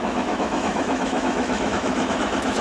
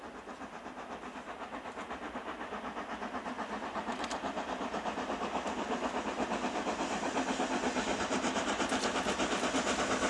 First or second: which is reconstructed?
first